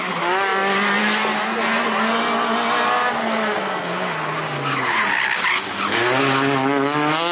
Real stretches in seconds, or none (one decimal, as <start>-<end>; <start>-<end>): 0.0-7.3

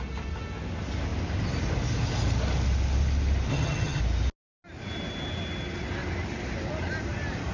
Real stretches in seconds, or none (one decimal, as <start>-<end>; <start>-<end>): 0.0-3.5; 4.0-7.5

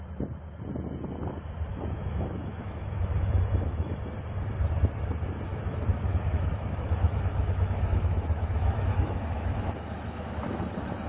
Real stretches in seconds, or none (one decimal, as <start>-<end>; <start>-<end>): 0.0-1.7; 3.9-5.5; 10.4-11.1

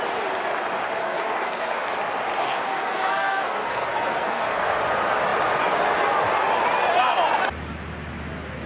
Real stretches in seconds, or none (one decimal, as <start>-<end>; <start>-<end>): 0.0-1.0; 2.0-2.4; 4.8-8.7

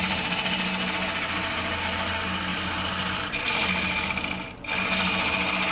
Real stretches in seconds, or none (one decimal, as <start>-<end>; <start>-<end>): 0.0-2.5; 3.5-5.7

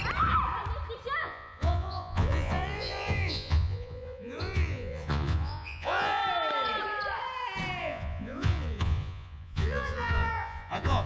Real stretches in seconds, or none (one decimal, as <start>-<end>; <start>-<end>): 0.0-1.2; 6.2-7.8